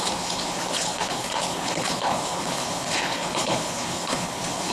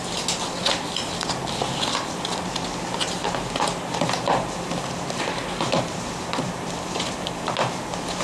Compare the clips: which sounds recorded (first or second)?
second